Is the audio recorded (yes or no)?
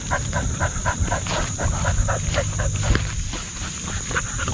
no